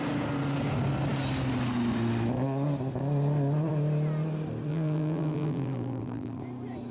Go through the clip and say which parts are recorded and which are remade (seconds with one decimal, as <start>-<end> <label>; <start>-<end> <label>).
0.0-4.7 recorded; 4.7-6.4 remade; 6.4-6.9 recorded